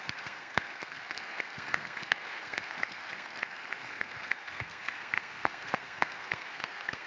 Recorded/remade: remade